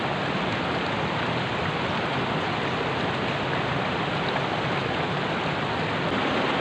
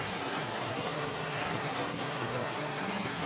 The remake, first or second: second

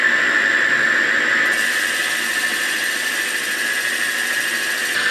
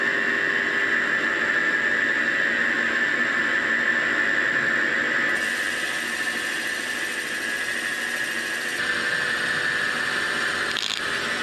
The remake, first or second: first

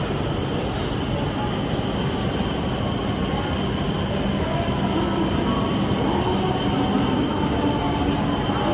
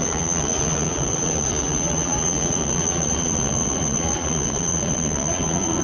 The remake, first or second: second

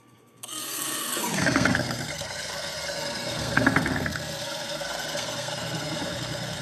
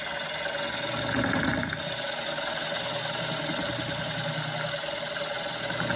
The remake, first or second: first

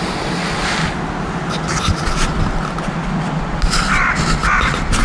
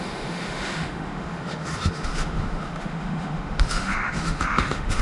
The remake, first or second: second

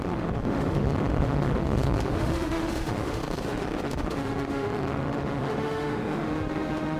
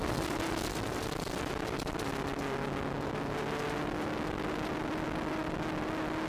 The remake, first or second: first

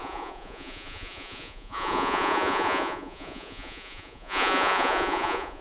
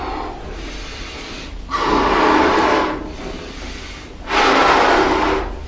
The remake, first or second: first